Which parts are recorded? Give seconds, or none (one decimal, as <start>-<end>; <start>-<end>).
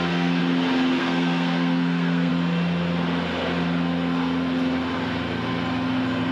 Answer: 0.4-1.0; 2.3-6.3